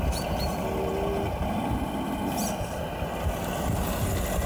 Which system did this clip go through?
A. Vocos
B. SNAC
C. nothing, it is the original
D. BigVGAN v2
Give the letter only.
C